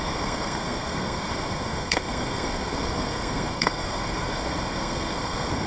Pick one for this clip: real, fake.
fake